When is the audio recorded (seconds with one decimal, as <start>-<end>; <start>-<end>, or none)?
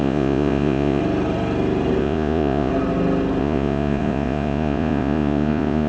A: 1.0-2.0; 2.7-3.4